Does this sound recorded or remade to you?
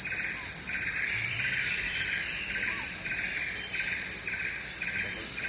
remade